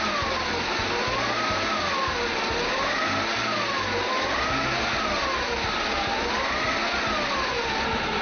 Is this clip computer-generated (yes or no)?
no